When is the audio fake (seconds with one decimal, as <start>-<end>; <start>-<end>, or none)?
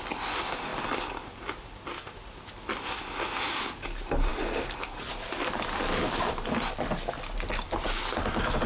none